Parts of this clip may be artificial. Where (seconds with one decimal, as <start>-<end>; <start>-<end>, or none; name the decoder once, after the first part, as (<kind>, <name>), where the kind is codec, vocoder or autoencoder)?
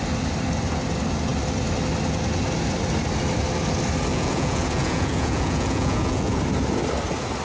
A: 4.1-6.4 (vocoder, Vocos)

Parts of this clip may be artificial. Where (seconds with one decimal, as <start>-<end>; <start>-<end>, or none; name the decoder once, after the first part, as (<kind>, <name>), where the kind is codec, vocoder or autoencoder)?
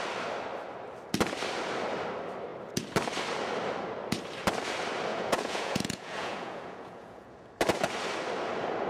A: 5.1-7.5 (vocoder, Vocos)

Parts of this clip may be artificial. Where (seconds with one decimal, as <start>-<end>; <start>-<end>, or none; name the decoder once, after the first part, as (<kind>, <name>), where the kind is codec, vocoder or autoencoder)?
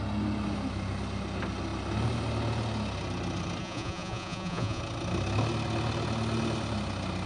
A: 3.6-4.8 (vocoder, Vocos)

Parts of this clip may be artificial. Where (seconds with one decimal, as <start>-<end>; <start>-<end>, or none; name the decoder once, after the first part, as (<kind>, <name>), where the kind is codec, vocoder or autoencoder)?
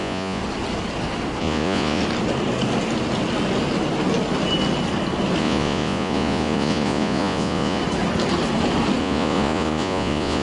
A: 0.0-0.4 (vocoder, Vocos); 1.4-2.0; 5.4-7.8; 9.0-10.4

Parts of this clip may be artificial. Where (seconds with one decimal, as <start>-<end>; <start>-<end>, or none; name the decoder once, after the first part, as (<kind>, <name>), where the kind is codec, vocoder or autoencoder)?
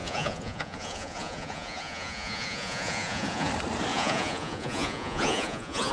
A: 0.0-3.5 (vocoder, Vocos); 3.9-5.9